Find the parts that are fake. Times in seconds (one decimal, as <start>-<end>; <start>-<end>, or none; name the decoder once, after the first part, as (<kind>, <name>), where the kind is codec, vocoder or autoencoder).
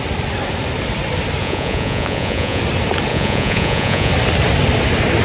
1.4-2.6 (vocoder, Vocos); 3.1-4.1